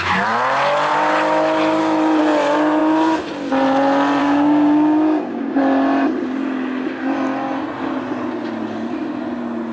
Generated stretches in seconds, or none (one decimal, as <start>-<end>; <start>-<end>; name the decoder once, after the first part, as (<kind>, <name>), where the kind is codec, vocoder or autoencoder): 4.2-5.6 (codec, DAC)

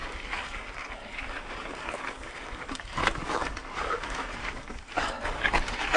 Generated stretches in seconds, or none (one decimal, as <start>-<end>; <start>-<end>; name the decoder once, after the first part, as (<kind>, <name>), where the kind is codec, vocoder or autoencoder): 0.0-6.0 (codec, DAC)

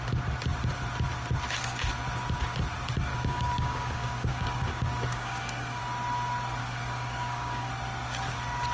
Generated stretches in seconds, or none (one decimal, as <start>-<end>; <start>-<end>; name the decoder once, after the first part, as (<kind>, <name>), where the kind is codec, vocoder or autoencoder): 3.1-5.8 (codec, DAC); 6.6-7.7